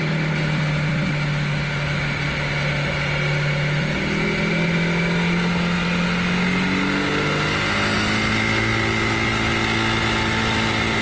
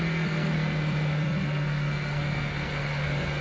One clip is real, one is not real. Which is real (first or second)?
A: first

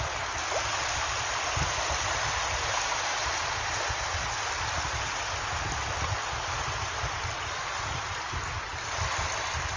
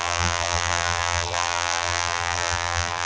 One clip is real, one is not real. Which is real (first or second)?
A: first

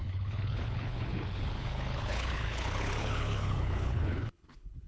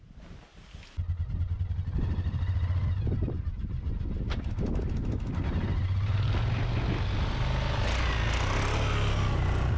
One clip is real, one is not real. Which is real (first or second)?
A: second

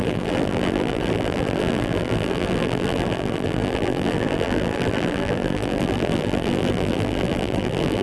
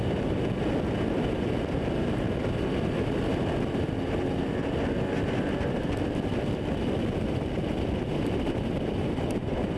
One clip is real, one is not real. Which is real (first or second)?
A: second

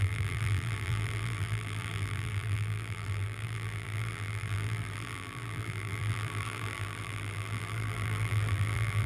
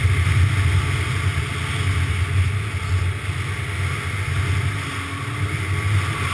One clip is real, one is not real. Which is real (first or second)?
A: second